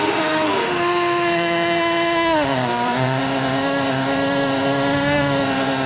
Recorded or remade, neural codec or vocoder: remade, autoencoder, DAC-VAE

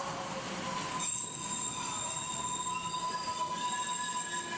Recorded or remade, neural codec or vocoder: recorded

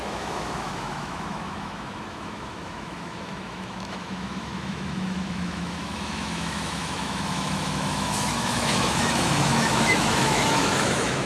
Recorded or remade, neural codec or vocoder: remade, autoencoder, DAC-VAE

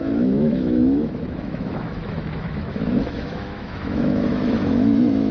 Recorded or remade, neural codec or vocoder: remade, autoencoder, DAC-VAE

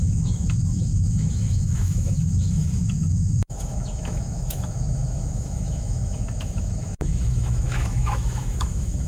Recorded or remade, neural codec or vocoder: remade, autoencoder, DAC-VAE